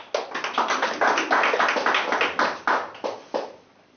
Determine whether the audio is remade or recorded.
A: recorded